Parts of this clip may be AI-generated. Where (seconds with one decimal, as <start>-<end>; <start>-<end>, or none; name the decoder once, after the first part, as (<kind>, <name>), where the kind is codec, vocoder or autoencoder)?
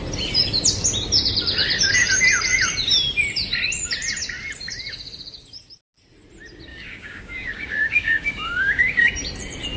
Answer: 6.7-9.1 (codec, DAC)